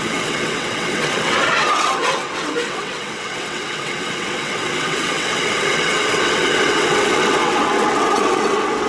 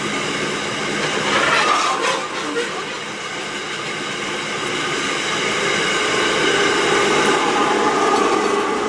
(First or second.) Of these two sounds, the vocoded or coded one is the first